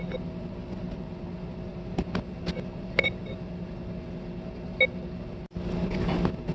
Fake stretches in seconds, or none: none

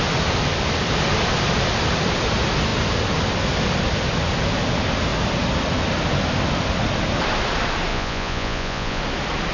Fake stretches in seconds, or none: 7.9-9.0 (vocoder, Vocos)

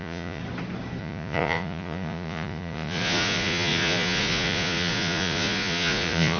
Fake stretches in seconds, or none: 0.0-0.4 (vocoder, Vocos); 1.0-6.4

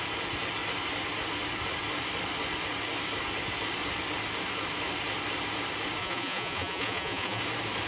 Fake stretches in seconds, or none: 6.0-7.4 (vocoder, Vocos)